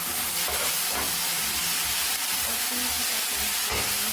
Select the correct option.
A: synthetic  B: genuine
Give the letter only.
B